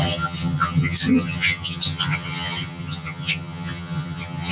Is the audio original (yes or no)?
no